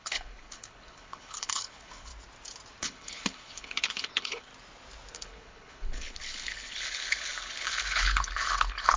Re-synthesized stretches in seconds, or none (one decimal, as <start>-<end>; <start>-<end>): 0.0-2.1; 2.8-4.5; 5.1-9.0